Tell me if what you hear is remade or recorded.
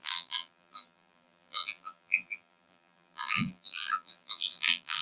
remade